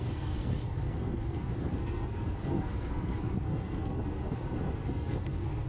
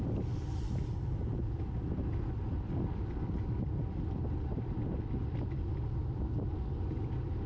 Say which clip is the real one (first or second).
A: second